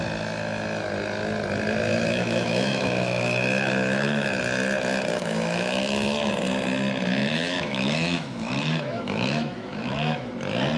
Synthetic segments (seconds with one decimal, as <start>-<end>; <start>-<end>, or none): 1.9-4.4; 5.1-6.3; 7.2-10.3